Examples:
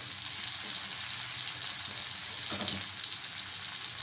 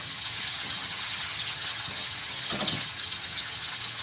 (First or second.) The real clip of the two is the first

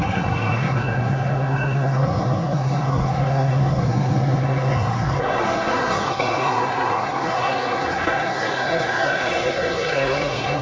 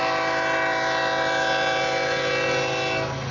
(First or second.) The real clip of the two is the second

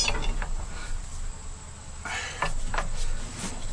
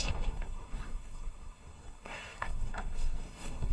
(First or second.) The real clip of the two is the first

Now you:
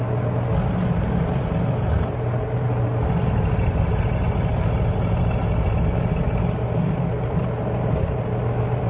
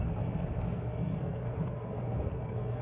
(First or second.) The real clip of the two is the first